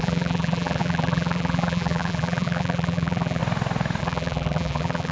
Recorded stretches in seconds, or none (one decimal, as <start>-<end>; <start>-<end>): 3.4-4.0